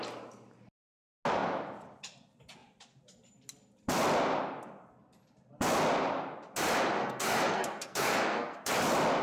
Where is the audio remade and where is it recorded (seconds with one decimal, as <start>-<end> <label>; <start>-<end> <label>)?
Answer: 0.0-7.0 recorded; 7.0-8.7 remade; 8.7-9.2 recorded

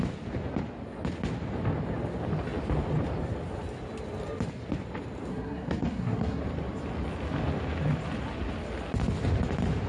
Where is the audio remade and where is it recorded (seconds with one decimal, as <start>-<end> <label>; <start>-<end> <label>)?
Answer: 0.0-5.3 recorded; 5.3-6.4 remade; 6.4-9.9 recorded

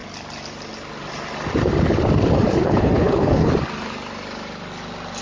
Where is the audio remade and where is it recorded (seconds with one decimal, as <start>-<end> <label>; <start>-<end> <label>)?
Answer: 0.0-2.6 recorded; 2.6-3.5 remade; 3.5-5.2 recorded

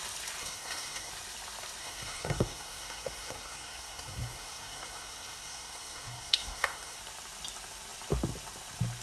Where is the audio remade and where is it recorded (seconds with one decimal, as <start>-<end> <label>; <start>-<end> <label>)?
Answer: 0.0-0.4 recorded; 0.4-1.1 remade; 1.1-1.8 recorded; 1.8-7.0 remade; 7.0-9.0 recorded

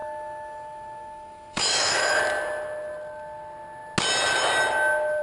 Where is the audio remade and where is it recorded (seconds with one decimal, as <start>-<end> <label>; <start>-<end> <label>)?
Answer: 0.0-2.2 remade; 2.2-5.2 recorded